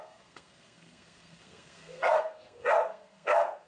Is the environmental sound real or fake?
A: fake